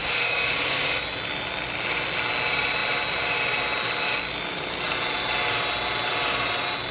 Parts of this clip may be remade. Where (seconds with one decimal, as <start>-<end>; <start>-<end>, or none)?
0.0-1.0